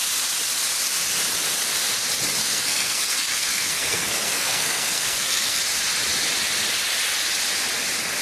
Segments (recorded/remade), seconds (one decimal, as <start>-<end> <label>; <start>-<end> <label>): 0.0-2.4 recorded; 2.4-5.6 remade; 5.6-8.2 recorded